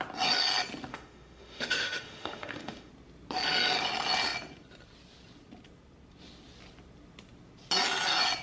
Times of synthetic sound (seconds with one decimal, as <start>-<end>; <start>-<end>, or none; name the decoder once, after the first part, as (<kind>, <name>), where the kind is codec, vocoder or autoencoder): 0.9-2.9 (autoencoder, DAC-VAE)